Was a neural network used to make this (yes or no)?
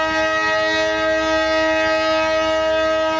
no